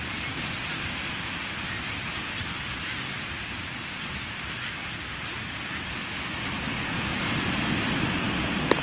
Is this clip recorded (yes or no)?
yes